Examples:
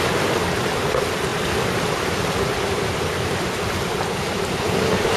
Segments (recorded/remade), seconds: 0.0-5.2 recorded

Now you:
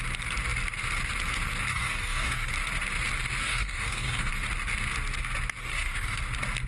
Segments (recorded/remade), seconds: 0.0-1.7 recorded; 1.7-2.5 remade; 2.5-3.4 recorded; 3.4-4.3 remade; 4.3-5.6 recorded; 5.6-6.2 remade; 6.2-6.7 recorded

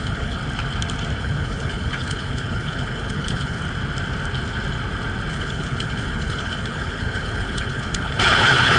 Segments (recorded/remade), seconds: 0.0-0.4 remade; 0.4-1.2 recorded; 1.2-3.6 remade; 3.6-5.3 recorded; 5.3-8.8 remade

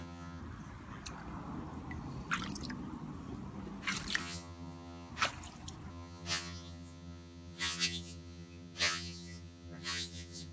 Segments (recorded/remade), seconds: 0.0-0.4 remade; 0.4-4.2 recorded; 4.2-5.1 remade; 5.1-5.9 recorded; 5.9-10.5 remade